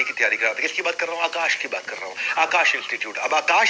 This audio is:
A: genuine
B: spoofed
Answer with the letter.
A